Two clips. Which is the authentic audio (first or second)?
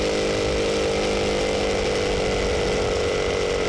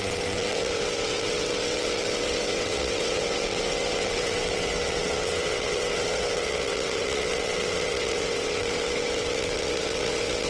first